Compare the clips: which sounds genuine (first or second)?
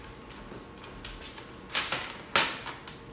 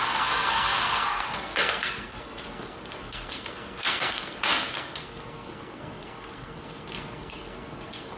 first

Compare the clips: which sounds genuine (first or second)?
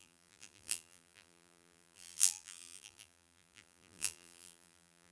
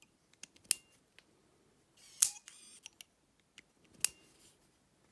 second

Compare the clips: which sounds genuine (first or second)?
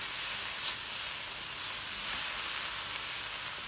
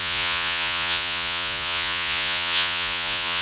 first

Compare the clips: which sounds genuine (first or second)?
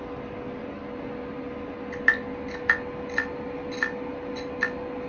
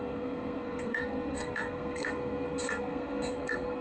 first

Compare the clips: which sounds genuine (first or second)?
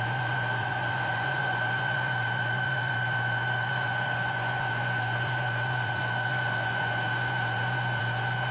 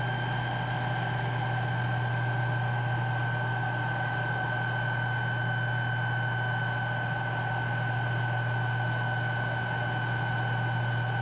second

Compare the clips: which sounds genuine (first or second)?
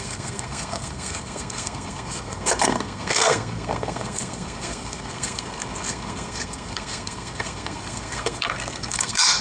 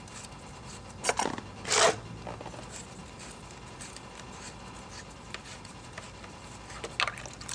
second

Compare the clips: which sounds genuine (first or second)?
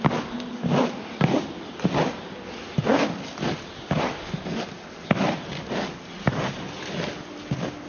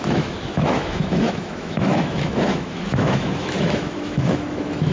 first